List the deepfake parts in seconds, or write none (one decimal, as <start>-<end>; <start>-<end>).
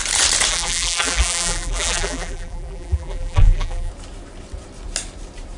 0.5-3.9